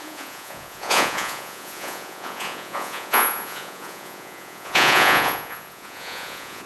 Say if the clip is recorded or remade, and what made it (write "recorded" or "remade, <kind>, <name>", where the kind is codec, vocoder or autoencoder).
remade, vocoder, Vocos